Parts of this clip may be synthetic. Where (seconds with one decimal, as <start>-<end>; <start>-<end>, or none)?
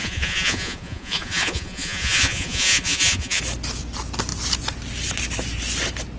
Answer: 0.0-3.4